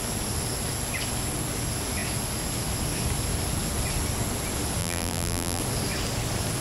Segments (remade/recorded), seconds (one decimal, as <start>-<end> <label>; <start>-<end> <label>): 0.0-4.8 recorded; 4.8-5.6 remade; 5.6-6.6 recorded